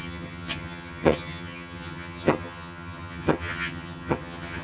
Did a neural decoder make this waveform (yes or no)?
yes